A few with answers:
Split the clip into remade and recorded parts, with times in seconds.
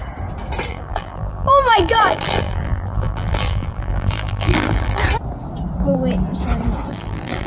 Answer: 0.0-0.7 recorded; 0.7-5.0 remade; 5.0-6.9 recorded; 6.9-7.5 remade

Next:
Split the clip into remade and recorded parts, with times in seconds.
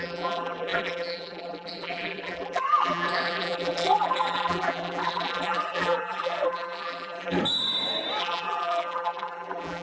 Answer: 0.0-7.4 remade; 7.4-8.2 recorded; 8.2-9.8 remade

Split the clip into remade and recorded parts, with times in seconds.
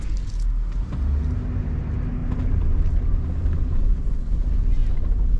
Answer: 0.0-2.2 recorded; 2.2-3.0 remade; 3.0-4.8 recorded; 4.8-5.4 remade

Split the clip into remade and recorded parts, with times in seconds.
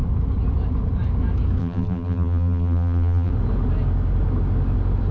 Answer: 0.0-1.6 recorded; 1.6-3.3 remade; 3.3-5.1 recorded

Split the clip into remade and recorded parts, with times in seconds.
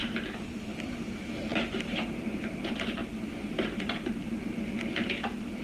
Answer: 0.0-0.8 recorded; 0.8-3.0 remade; 3.0-3.8 recorded; 3.8-4.2 remade; 4.2-5.6 recorded